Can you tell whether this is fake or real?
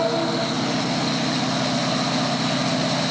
real